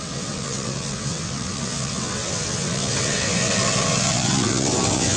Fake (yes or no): yes